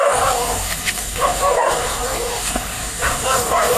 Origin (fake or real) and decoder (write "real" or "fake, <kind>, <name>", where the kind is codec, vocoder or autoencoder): fake, codec, DAC